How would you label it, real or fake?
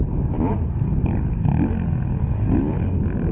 real